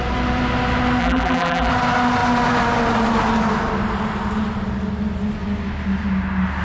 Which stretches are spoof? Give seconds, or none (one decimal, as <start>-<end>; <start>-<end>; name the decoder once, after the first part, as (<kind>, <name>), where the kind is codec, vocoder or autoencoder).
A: 1.0-1.7 (vocoder, BigVGAN v2)

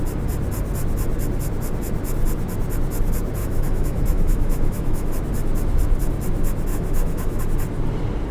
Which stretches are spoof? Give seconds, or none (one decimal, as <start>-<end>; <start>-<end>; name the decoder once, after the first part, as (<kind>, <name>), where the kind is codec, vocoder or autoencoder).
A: 3.4-5.1 (autoencoder, DAC-VAE); 6.7-7.4

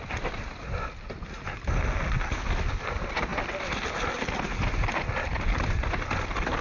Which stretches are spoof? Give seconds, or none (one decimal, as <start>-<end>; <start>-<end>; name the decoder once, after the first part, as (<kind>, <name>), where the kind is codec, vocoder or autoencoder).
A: none

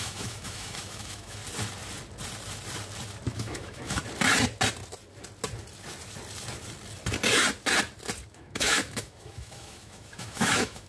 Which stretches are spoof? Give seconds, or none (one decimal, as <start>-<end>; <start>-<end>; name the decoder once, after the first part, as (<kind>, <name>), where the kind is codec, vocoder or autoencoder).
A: 0.0-1.4 (autoencoder, DAC-VAE); 3.3-4.0; 8.3-10.9

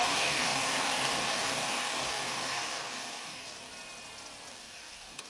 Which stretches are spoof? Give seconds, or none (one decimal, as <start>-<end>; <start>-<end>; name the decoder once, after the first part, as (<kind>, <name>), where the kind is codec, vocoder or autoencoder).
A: 0.0-3.7 (codec, DAC); 4.5-5.3

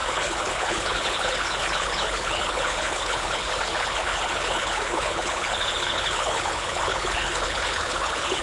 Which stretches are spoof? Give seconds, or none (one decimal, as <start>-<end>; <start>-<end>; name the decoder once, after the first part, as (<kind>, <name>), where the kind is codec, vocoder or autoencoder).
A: 0.0-8.4 (codec, HILCodec)

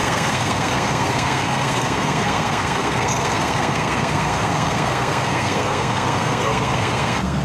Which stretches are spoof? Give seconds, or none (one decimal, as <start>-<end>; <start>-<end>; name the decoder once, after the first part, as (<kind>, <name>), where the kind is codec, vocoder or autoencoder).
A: 0.0-7.4 (codec, SNAC)